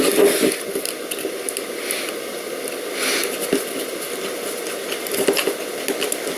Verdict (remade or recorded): recorded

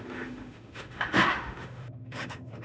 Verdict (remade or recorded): remade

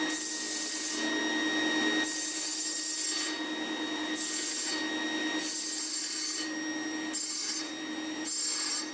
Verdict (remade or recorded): recorded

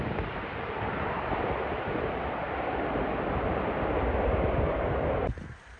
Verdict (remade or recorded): remade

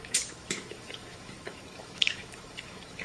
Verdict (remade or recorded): remade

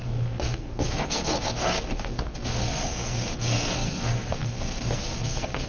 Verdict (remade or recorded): remade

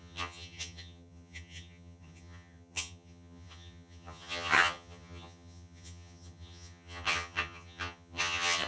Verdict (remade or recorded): remade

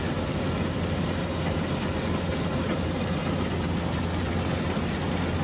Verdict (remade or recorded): recorded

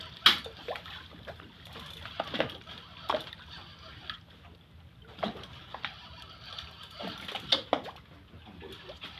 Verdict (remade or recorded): recorded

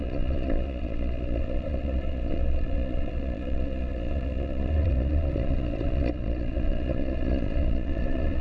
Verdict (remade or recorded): remade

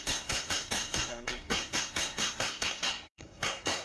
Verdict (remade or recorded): remade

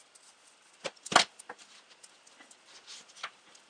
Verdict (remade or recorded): recorded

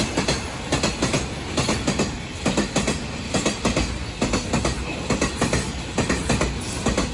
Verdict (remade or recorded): recorded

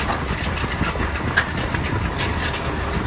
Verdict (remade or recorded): recorded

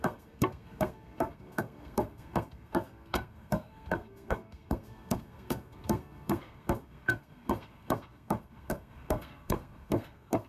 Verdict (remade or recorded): remade